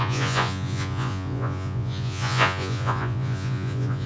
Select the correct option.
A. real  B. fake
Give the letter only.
B